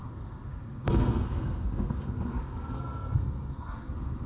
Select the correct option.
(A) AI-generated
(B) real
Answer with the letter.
A